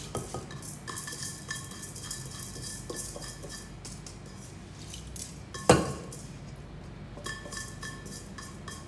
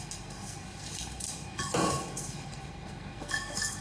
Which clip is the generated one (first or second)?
second